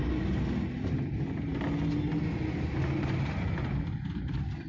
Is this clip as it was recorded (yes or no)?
yes